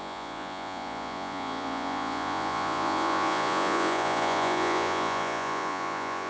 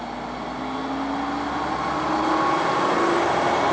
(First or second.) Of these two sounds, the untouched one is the second